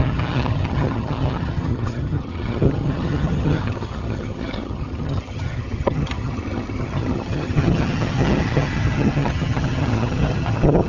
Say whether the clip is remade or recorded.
remade